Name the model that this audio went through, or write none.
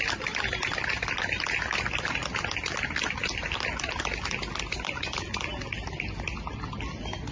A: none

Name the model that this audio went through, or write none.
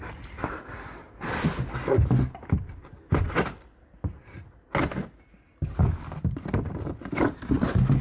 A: none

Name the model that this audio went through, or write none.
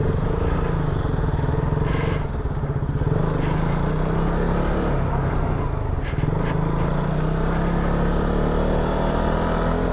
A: none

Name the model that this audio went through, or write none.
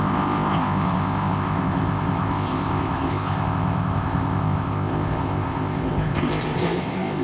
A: codec, ZipCodec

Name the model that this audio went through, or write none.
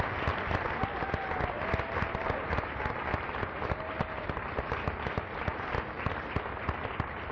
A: none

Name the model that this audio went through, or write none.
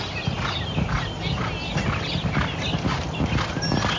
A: none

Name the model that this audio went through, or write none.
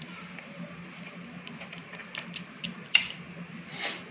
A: none